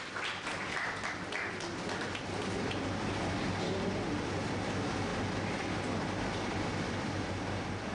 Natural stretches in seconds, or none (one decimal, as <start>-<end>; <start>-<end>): 0.0-5.1; 7.3-7.9